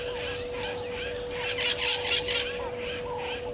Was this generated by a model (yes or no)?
no